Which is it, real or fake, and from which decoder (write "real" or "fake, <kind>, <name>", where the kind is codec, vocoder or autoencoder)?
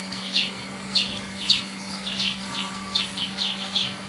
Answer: fake, codec, SNAC